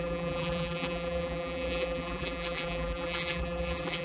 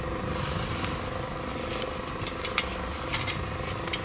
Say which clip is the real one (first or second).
second